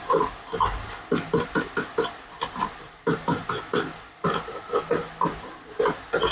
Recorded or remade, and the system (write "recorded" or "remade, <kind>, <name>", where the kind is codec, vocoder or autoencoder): recorded